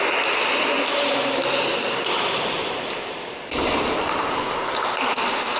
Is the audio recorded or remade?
recorded